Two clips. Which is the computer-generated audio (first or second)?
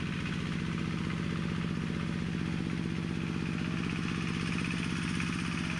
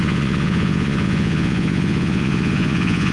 second